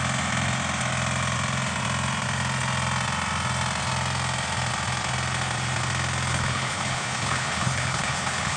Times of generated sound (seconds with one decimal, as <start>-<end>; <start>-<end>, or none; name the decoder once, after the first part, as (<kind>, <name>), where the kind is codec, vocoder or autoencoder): 6.3-8.6 (codec, HILCodec)